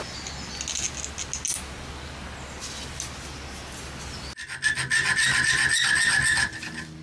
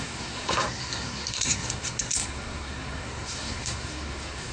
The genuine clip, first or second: first